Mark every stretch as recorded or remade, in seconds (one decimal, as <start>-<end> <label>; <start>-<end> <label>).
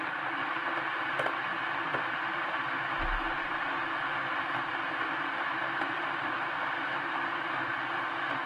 0.0-8.5 remade